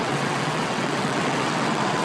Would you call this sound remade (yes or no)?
yes